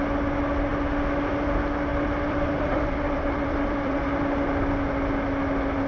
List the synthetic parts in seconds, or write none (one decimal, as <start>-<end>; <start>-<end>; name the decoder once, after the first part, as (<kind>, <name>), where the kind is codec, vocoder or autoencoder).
1.9-4.2 (vocoder, BigVGAN v2)